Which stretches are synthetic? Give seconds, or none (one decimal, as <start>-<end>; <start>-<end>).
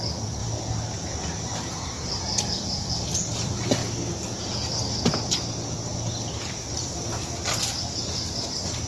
0.0-0.4; 1.7-3.8; 8.5-8.9